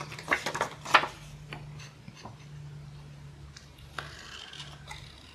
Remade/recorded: recorded